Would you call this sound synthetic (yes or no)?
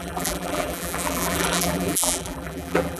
yes